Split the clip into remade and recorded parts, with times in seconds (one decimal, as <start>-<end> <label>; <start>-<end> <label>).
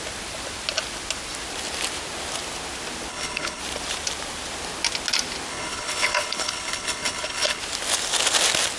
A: 0.0-3.1 recorded; 3.1-3.6 remade; 3.6-5.5 recorded; 5.5-7.6 remade; 7.6-8.8 recorded